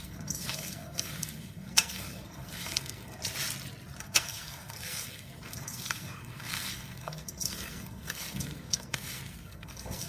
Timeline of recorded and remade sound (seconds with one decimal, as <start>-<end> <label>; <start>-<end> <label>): 0.0-3.2 remade; 3.2-4.0 recorded; 4.0-10.1 remade